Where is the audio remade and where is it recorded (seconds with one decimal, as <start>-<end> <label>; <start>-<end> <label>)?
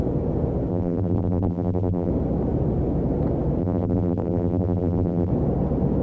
0.0-0.7 recorded; 0.7-2.1 remade; 2.1-3.6 recorded; 3.6-5.3 remade; 5.3-6.0 recorded